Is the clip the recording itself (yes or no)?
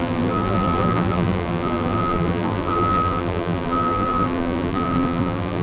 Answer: no